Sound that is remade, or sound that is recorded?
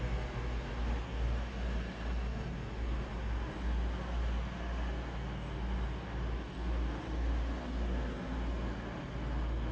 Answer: recorded